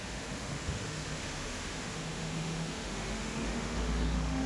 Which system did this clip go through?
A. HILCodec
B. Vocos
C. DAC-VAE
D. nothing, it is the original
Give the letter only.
C